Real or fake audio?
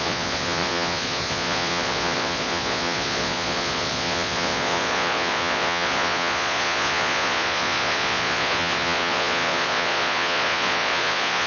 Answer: fake